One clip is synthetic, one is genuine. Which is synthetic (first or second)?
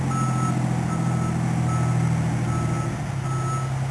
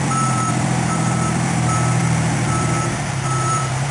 second